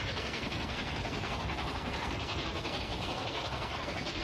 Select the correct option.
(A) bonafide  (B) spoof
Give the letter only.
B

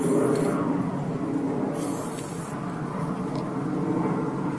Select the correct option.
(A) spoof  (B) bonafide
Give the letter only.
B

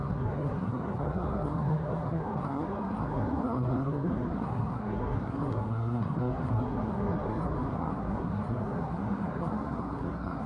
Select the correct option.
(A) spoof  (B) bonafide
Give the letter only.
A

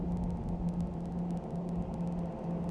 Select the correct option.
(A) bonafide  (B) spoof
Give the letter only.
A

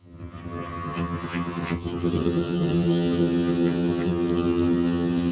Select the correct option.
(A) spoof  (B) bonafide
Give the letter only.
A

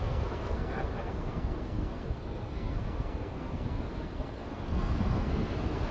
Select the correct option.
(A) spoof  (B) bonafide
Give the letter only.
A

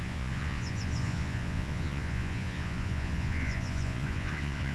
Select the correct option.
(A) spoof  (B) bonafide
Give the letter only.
A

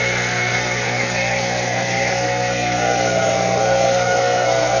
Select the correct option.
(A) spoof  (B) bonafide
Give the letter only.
A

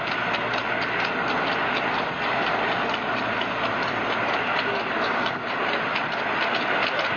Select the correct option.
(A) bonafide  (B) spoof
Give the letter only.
A